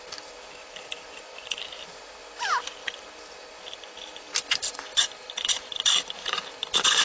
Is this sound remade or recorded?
remade